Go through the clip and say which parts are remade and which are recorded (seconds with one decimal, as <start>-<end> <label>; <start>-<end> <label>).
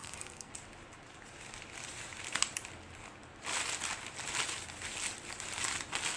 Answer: 0.0-0.5 remade; 0.5-6.2 recorded